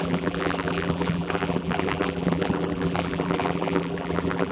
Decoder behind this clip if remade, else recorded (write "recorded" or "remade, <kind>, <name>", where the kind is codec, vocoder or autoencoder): remade, vocoder, BigVGAN v2